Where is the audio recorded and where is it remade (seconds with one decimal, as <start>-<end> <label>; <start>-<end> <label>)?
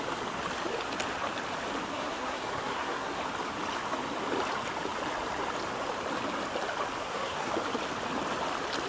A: 0.0-1.9 recorded; 1.9-3.2 remade; 3.2-7.0 recorded; 7.0-7.5 remade; 7.5-8.9 recorded